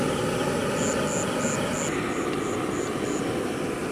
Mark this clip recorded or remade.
recorded